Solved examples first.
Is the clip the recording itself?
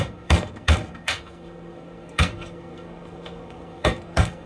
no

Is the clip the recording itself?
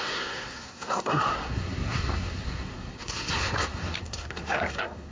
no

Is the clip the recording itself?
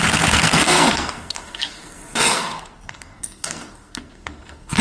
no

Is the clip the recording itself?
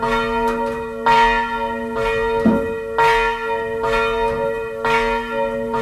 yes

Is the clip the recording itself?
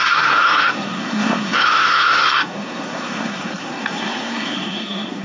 no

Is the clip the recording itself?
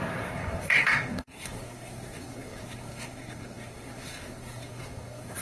no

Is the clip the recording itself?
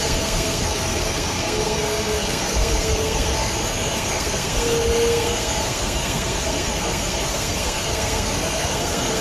no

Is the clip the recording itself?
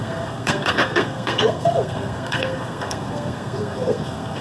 no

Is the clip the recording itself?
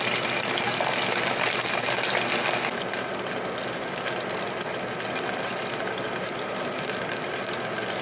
yes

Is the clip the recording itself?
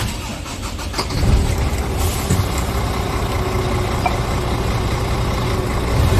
yes